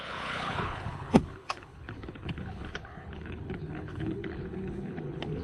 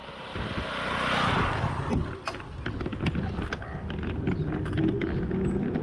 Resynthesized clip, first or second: first